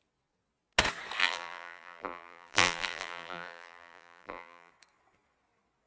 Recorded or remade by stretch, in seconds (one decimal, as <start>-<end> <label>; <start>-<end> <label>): 0.0-1.2 recorded; 1.2-4.7 remade; 4.7-5.9 recorded